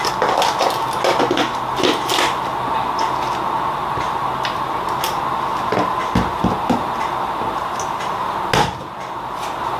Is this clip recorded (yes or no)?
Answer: yes